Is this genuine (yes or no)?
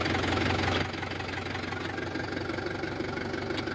yes